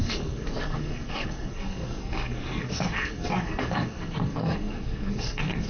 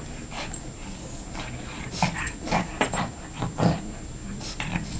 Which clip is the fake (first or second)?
first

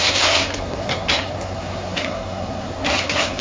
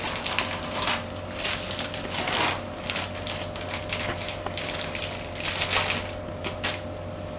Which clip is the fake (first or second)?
first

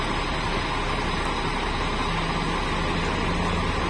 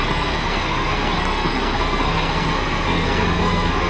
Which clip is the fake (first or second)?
second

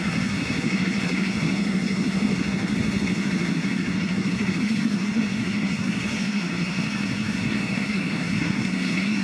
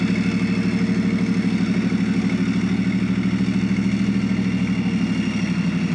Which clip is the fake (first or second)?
first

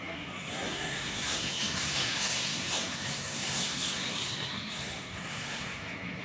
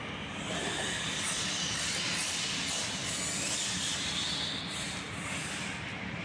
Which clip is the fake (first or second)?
first